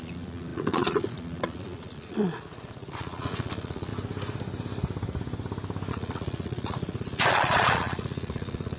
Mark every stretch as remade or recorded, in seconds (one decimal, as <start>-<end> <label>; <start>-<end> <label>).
0.0-3.9 remade; 3.9-5.9 recorded; 5.9-8.8 remade